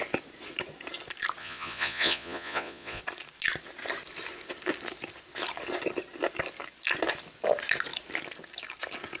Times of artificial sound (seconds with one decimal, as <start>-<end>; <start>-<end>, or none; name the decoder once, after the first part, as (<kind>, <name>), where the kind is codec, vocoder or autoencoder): 1.4-3.0 (vocoder, Vocos)